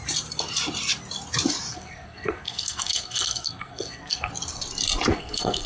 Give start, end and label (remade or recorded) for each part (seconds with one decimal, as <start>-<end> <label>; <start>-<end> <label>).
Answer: 0.0-1.7 recorded; 1.7-4.3 remade; 4.3-5.1 recorded; 5.1-5.7 remade